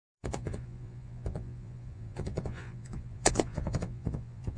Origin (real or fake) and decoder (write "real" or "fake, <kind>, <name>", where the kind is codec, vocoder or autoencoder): fake, vocoder, Vocos